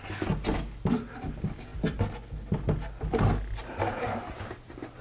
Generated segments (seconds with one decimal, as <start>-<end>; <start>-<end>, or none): none